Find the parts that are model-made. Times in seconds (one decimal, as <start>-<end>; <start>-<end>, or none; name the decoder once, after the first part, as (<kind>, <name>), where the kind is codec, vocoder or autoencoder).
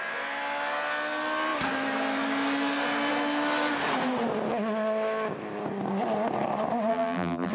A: 6.9-7.5 (vocoder, BigVGAN v2)